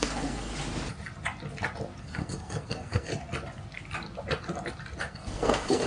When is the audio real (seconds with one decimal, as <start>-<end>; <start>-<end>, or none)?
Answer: 0.5-2.0; 3.1-5.0